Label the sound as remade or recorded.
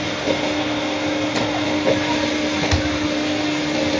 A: recorded